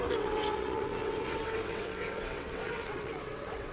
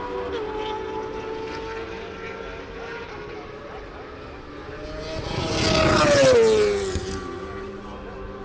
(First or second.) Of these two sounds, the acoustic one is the second